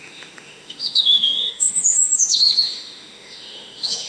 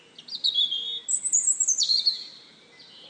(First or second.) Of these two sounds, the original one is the second